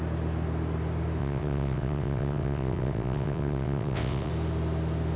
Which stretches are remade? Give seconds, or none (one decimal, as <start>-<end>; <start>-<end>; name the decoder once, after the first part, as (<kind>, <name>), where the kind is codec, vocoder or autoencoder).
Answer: 1.2-4.3 (vocoder, WaveNeXt)